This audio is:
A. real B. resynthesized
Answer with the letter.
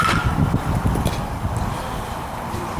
A